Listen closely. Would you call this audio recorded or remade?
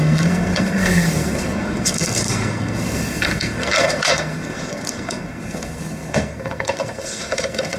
remade